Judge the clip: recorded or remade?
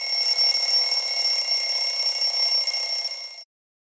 recorded